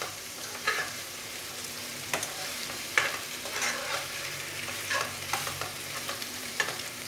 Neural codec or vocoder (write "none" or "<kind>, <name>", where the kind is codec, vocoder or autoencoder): vocoder, BigVGAN v2